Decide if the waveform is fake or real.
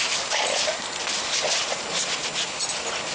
real